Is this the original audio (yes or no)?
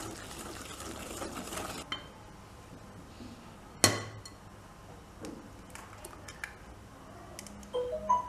yes